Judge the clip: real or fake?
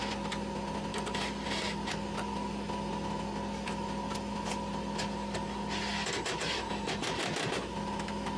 real